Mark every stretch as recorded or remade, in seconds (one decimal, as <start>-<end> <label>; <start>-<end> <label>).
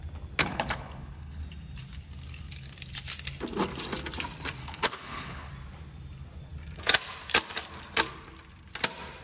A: 0.0-0.4 recorded; 0.4-1.4 remade; 1.4-4.6 recorded; 4.6-5.5 remade; 5.5-9.2 recorded